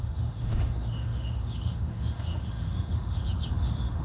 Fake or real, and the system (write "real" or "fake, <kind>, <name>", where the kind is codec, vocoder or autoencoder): fake, autoencoder, DAC-VAE